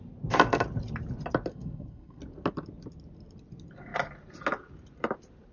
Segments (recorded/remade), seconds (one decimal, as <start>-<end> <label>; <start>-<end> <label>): 0.0-1.5 recorded; 1.5-2.2 remade; 2.2-5.5 recorded